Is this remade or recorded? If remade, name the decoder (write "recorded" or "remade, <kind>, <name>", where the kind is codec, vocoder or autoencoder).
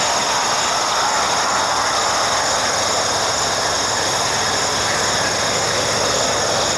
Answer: recorded